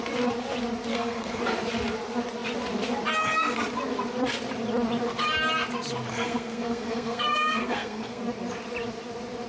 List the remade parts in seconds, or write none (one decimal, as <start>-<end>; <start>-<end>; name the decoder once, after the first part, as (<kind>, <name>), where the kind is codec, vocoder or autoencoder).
0.9-1.4 (codec, SNAC); 6.1-8.2